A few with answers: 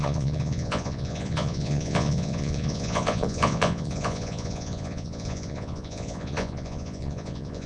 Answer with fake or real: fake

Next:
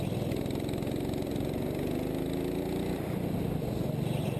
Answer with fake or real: real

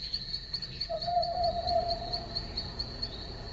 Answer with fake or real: fake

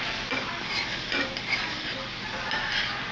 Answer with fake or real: real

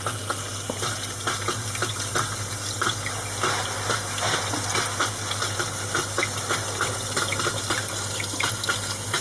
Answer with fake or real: real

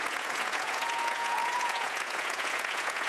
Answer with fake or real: fake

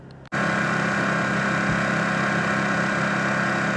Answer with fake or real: real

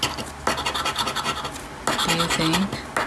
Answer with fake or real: real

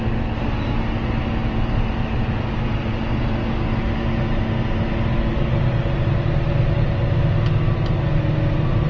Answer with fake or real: real